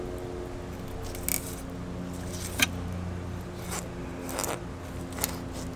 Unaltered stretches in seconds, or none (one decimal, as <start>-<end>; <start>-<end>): 0.0-5.8